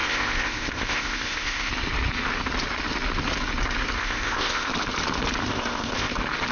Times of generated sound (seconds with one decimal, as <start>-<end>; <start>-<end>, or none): 0.0-1.7; 4.0-4.7; 5.4-6.1